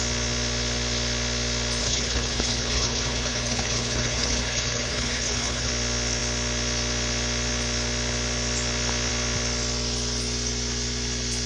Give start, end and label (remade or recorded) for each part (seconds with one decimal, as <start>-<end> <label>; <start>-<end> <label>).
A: 0.0-1.8 recorded; 1.8-5.7 remade; 5.7-11.5 recorded